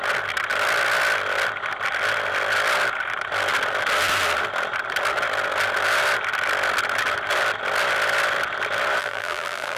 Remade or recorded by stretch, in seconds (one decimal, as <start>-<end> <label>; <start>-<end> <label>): 0.0-9.0 recorded; 9.0-9.8 remade